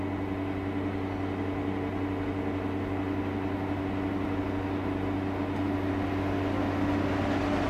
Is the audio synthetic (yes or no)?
no